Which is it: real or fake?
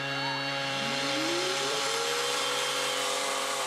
fake